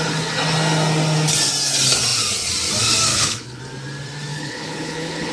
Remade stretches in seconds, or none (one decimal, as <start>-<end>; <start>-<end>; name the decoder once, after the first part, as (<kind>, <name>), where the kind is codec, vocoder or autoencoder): 3.1-3.6 (codec, HILCodec); 4.3-5.3